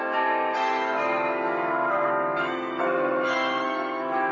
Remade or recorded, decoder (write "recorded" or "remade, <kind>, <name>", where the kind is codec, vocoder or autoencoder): remade, codec, SNAC